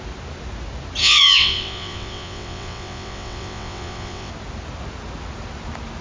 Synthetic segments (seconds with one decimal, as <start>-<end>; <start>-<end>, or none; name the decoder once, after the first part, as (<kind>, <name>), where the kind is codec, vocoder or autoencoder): 1.0-4.3 (vocoder, WaveNeXt)